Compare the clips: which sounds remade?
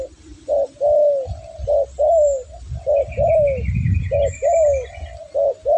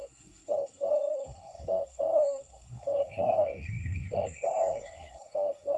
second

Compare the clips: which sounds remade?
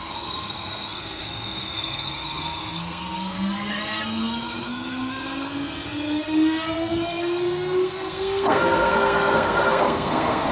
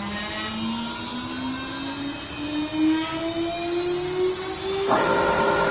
first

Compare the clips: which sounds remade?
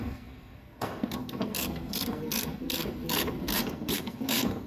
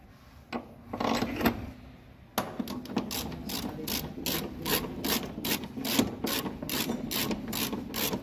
first